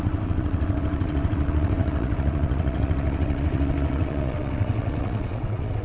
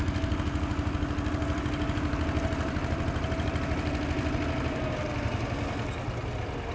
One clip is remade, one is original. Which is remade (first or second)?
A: first